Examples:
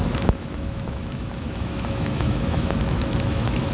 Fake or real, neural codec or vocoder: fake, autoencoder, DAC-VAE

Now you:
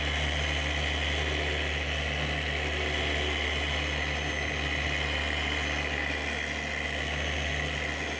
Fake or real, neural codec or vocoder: real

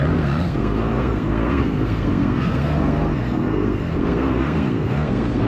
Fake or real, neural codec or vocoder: fake, codec, SNAC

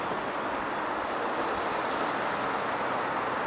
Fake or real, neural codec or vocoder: real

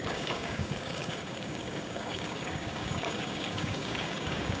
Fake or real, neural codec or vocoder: fake, codec, DAC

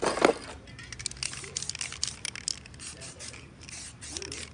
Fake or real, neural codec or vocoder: real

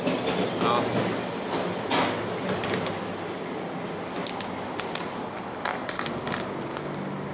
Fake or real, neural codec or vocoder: real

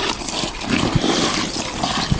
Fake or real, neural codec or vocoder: real